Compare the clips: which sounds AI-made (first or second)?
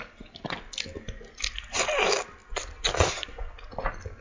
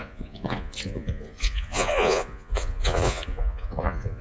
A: second